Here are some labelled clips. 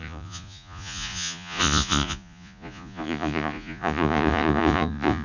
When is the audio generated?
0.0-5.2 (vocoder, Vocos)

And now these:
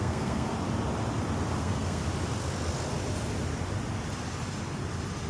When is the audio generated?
0.0-0.5 (codec, SNAC); 1.6-2.0